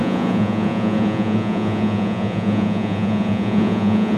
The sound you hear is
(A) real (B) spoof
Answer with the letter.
B